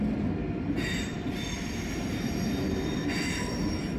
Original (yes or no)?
yes